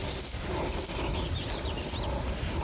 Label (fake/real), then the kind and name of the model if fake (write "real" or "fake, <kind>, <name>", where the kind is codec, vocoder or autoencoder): real